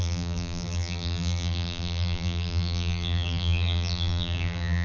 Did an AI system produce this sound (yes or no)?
yes